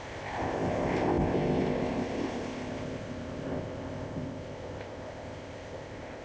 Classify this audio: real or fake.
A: fake